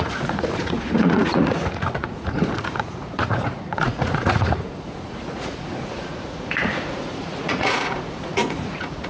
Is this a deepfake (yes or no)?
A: yes